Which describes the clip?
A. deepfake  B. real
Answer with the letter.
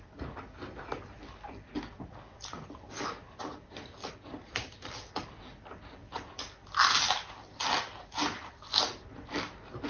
B